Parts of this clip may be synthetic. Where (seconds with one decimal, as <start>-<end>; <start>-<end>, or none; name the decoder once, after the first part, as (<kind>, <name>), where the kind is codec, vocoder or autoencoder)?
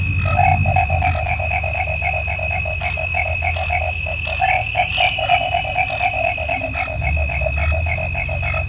none